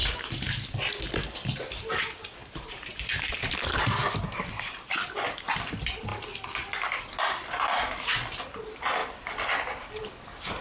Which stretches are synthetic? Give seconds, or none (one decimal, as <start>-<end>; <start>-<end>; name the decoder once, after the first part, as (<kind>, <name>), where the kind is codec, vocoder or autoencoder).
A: 2.4-3.5 (vocoder, BigVGAN v2)

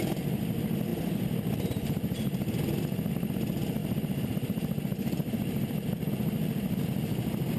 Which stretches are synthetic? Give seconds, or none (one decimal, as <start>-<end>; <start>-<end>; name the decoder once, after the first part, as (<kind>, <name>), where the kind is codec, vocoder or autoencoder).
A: 0.9-3.1 (vocoder, BigVGAN v2); 3.8-6.1